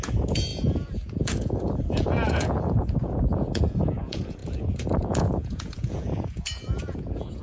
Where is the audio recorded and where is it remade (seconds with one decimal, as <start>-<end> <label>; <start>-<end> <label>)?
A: 0.0-7.4 remade